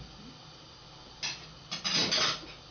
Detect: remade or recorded recorded